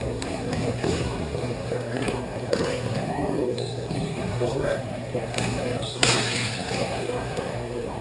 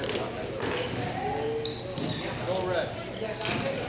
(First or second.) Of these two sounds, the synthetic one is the first